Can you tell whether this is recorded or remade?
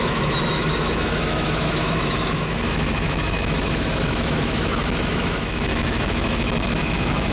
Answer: remade